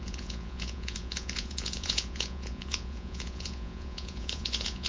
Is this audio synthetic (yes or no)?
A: yes